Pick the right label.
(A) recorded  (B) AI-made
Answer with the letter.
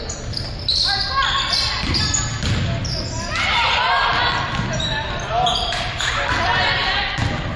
A